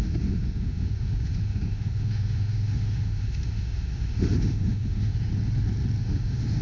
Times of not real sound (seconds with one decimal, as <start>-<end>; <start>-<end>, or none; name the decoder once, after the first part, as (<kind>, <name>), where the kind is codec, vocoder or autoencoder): 0.0-5.3 (autoencoder, DAC-VAE); 6.0-6.6

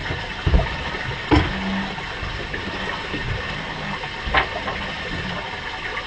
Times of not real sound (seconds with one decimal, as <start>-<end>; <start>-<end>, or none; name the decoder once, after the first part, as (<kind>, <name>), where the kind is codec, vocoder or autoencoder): 0.0-1.0 (vocoder, BigVGAN v2); 3.2-3.7

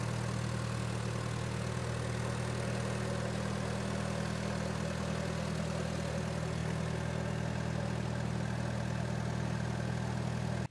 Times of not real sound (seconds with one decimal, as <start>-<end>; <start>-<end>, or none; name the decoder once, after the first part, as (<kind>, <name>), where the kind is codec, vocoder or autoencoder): none

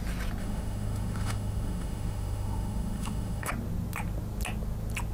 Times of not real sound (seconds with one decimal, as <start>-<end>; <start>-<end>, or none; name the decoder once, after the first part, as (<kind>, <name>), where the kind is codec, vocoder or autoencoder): 0.4-3.5 (autoencoder, DAC-VAE)

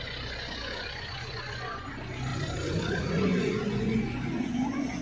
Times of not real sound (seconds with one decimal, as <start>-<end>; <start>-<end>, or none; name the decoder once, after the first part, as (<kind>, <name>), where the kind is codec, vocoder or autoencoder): 0.0-5.0 (vocoder, Vocos)

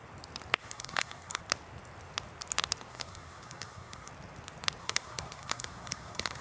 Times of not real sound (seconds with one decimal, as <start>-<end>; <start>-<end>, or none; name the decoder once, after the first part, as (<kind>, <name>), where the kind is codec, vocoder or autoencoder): 0.6-1.4 (codec, SNAC); 2.9-4.1; 4.8-6.4